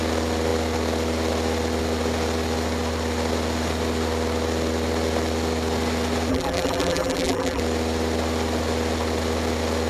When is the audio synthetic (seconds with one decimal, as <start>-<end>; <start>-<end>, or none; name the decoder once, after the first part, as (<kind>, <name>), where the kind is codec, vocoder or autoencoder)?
6.3-7.6 (vocoder, BigVGAN v2)